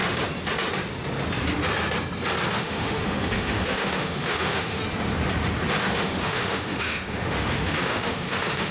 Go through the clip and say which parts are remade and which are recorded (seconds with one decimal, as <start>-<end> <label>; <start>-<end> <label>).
0.0-2.5 recorded; 2.5-4.8 remade; 4.8-5.8 recorded; 5.8-8.7 remade